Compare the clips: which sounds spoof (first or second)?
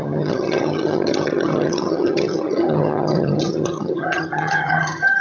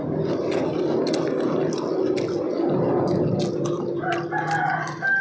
first